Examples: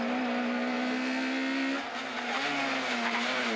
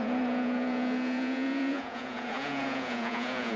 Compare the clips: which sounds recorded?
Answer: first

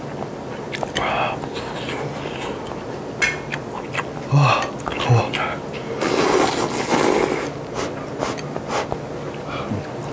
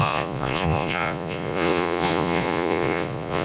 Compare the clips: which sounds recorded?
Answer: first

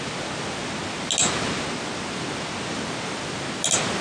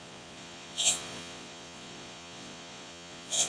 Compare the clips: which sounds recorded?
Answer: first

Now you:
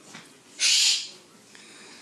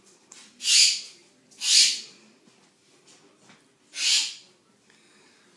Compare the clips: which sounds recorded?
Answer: second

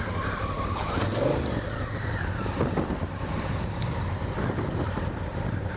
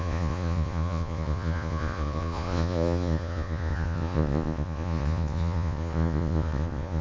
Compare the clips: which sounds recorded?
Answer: first